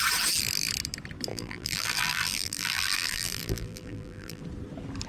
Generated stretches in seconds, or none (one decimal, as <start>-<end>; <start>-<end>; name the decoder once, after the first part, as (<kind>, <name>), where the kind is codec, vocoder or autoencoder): 1.3-4.4 (vocoder, BigVGAN v2)